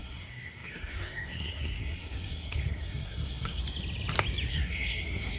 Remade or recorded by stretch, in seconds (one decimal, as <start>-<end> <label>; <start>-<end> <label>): 0.0-3.6 remade; 3.6-4.5 recorded; 4.5-5.4 remade